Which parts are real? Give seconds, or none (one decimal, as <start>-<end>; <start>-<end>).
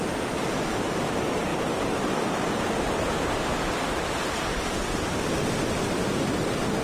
0.0-6.8